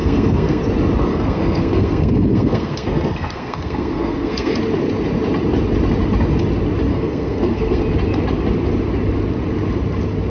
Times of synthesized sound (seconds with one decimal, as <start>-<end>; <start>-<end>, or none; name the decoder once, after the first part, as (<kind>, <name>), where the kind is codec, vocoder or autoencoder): 0.0-0.6 (codec, SNAC); 1.1-4.6; 6.9-7.8